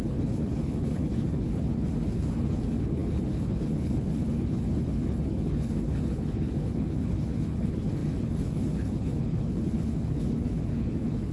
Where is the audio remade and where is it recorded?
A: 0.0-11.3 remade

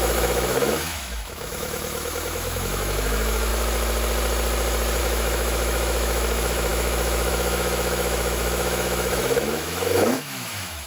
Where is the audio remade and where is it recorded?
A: 0.0-3.5 remade; 3.5-5.0 recorded; 5.0-10.9 remade